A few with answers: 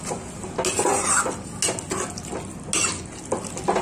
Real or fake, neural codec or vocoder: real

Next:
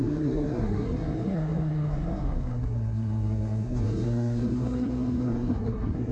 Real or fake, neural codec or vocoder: fake, codec, SNAC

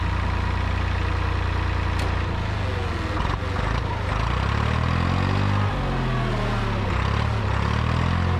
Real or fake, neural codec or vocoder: real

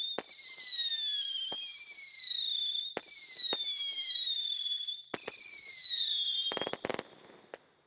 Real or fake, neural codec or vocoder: real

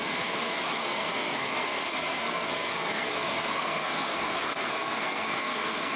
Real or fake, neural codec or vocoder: fake, codec, SNAC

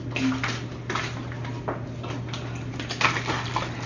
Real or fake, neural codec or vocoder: real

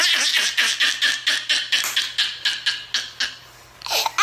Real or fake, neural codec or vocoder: real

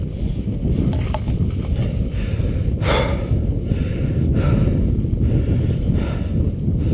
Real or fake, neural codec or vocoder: real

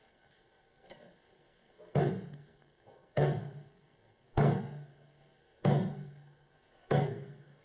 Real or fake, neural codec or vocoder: fake, codec, SNAC